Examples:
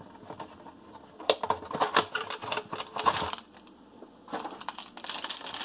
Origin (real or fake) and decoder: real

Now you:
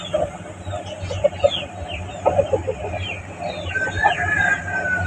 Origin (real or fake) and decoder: real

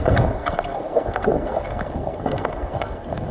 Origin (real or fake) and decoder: fake, codec, SNAC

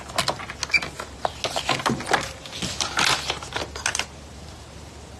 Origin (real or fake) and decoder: real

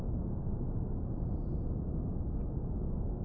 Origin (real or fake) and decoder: real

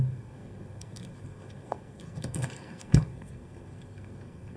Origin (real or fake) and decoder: fake, codec, SNAC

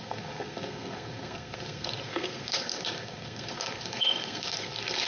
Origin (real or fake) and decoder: fake, codec, SNAC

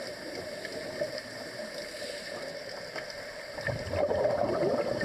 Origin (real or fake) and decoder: real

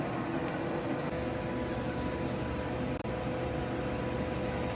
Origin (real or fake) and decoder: real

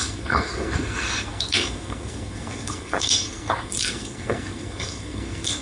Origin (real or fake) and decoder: fake, codec, SNAC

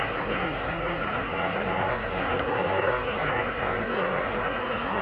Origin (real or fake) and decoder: fake, codec, SNAC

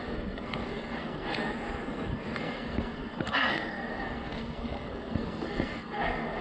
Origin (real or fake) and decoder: fake, codec, SNAC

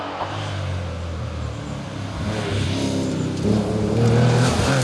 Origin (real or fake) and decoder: real